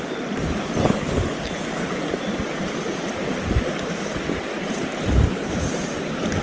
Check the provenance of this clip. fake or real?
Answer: real